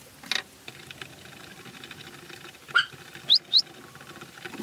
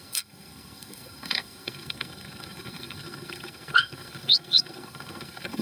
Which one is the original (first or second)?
first